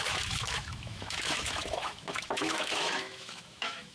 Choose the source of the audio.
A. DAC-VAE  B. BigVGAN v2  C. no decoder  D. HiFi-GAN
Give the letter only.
A